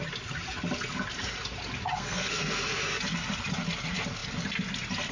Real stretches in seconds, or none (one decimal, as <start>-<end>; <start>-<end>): 0.0-1.9; 2.8-5.1